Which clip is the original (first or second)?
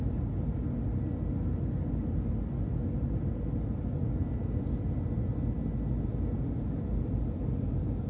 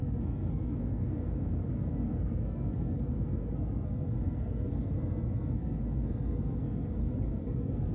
first